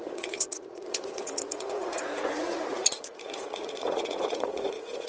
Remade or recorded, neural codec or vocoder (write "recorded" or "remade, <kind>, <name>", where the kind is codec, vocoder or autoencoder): remade, vocoder, Vocos